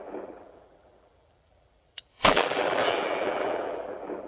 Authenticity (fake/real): fake